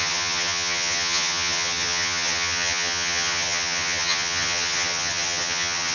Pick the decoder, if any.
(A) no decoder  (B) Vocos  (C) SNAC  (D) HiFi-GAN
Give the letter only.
D